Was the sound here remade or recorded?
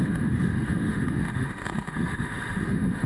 remade